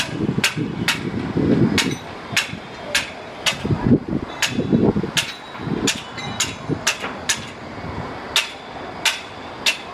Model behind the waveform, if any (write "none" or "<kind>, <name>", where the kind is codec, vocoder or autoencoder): none